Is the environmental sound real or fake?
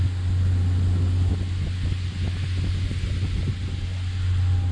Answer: real